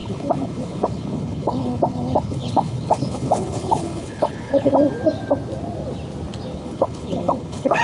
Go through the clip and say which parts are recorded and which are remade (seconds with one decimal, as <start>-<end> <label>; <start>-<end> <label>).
0.0-4.7 remade; 4.7-6.5 recorded; 6.5-7.8 remade